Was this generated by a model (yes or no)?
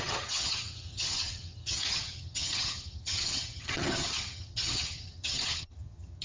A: yes